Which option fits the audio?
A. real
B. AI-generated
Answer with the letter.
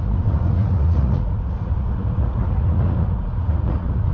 B